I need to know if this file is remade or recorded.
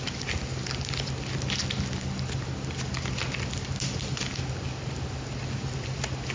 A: recorded